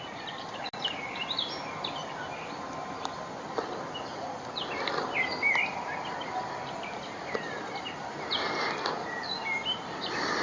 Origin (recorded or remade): recorded